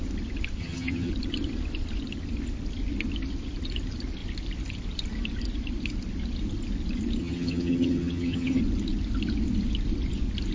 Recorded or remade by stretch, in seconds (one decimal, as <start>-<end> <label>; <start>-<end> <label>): 0.0-0.6 recorded; 0.6-1.1 remade; 1.1-7.2 recorded; 7.2-8.6 remade; 8.6-10.5 recorded